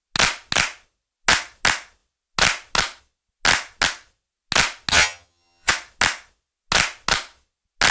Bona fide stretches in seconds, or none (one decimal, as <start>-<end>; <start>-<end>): 0.0-4.9; 5.7-7.9